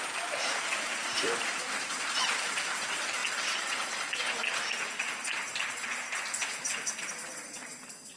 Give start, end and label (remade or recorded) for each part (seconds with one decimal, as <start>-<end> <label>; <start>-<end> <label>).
0.0-3.2 remade; 3.2-4.5 recorded; 4.5-8.2 remade